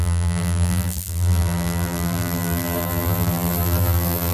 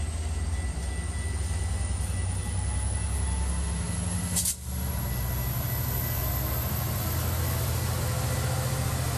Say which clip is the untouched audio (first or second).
second